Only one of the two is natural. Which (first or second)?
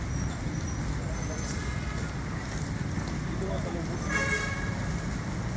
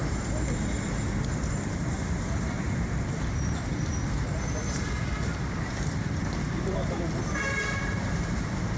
first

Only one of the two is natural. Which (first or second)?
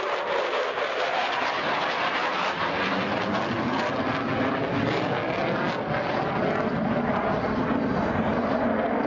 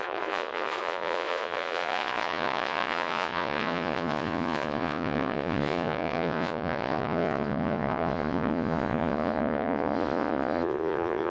first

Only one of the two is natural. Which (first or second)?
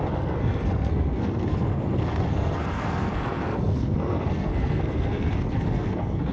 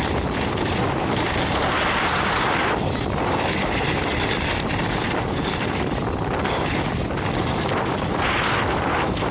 second